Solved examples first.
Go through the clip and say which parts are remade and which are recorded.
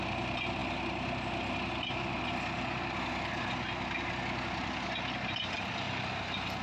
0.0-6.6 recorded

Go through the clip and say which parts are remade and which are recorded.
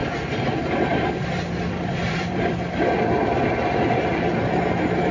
0.0-0.5 remade; 0.5-0.9 recorded; 0.9-4.0 remade; 4.0-5.1 recorded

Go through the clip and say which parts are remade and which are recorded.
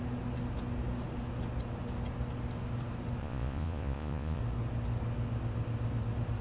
0.0-3.2 recorded; 3.2-4.4 remade; 4.4-6.4 recorded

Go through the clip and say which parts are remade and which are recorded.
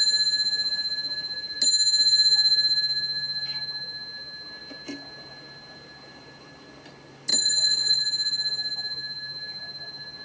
0.0-7.3 recorded; 7.3-8.0 remade; 8.0-10.2 recorded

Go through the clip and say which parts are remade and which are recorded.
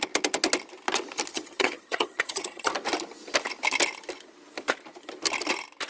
0.0-1.3 recorded; 1.3-2.7 remade; 2.7-5.9 recorded